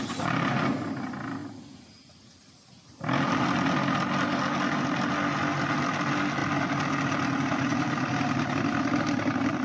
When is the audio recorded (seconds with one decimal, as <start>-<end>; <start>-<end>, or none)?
0.0-9.6